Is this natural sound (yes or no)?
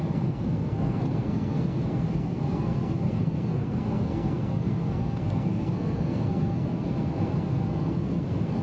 no